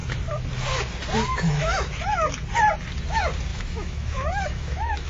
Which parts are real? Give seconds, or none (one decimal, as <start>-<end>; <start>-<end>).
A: 0.0-1.3; 2.0-3.5